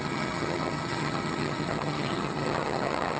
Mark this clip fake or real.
fake